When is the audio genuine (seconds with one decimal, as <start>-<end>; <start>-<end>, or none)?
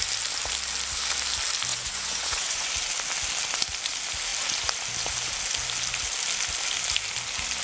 0.0-1.7; 2.7-7.6